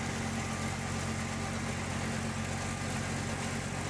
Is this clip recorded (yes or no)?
yes